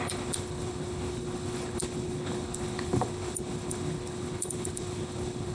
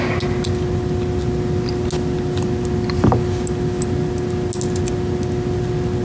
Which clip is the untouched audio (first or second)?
second